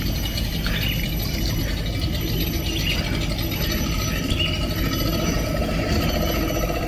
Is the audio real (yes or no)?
yes